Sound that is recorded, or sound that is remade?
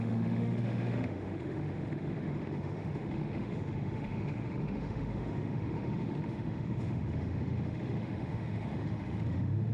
remade